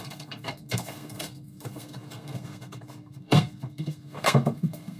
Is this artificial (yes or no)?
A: yes